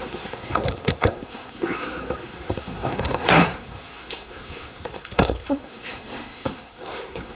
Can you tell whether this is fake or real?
fake